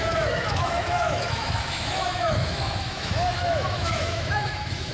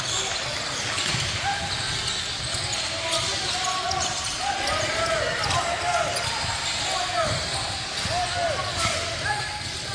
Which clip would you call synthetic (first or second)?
first